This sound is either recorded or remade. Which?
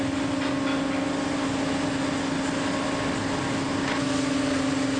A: recorded